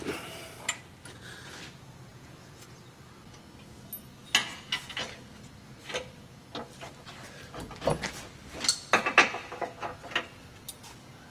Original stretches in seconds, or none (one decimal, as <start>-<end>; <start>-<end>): 0.0-2.1; 2.7-11.3